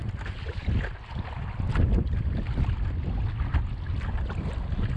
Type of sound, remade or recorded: recorded